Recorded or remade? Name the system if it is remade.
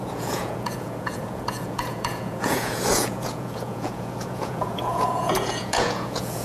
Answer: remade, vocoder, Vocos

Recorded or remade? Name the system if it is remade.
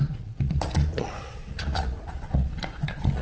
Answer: remade, vocoder, Vocos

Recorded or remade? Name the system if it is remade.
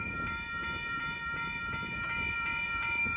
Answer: remade, vocoder, BigVGAN v2